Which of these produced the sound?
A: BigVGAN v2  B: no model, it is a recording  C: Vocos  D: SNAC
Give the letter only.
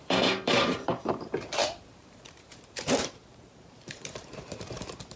A